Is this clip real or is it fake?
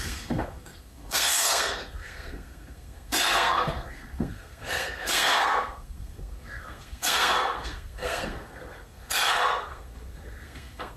fake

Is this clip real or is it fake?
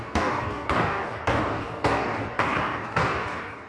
fake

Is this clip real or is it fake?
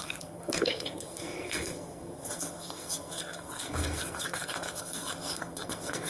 fake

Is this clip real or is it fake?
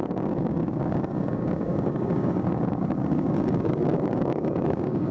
fake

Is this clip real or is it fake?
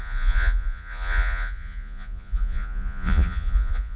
fake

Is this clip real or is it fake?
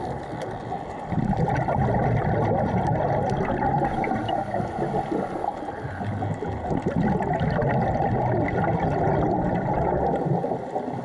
real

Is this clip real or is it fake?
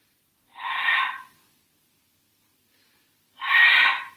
real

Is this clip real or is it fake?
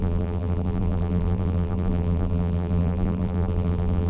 fake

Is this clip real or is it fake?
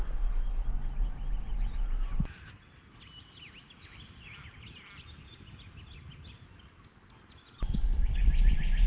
real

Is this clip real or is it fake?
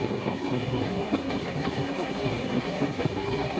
fake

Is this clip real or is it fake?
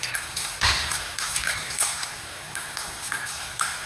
fake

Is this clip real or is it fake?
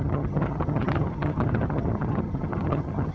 fake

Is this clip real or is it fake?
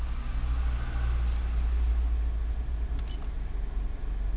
real